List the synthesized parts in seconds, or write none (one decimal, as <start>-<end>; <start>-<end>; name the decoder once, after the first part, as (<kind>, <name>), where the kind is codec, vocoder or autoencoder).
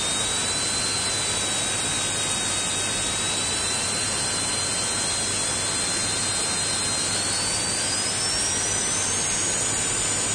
none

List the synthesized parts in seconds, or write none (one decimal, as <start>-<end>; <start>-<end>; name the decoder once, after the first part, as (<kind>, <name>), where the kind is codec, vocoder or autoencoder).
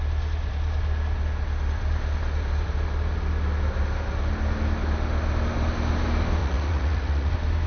6.4-7.3 (vocoder, Vocos)